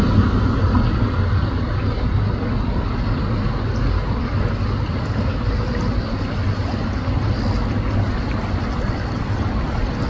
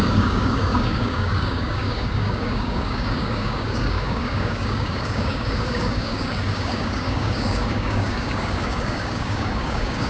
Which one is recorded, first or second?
first